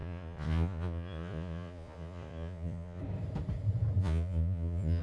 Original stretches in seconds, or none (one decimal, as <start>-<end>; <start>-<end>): 3.0-4.0